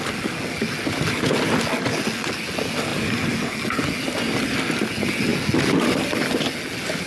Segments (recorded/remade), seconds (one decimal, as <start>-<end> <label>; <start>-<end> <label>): 0.0-7.1 recorded